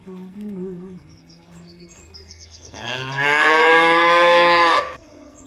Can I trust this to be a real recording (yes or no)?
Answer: no